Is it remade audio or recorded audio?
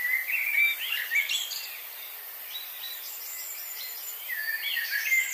remade